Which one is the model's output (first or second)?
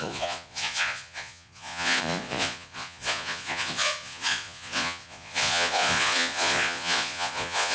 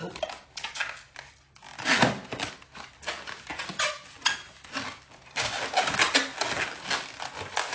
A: first